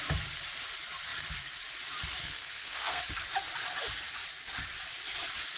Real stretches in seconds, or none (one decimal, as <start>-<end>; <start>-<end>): 0.0-2.2; 3.0-5.6